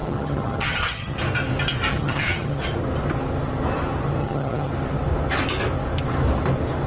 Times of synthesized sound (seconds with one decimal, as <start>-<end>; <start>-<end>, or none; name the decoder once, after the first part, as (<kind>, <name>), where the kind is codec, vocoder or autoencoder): 0.0-1.2 (vocoder, HiFi-GAN); 1.9-2.6; 4.2-4.7